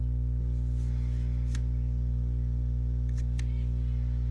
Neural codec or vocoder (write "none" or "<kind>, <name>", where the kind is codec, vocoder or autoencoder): none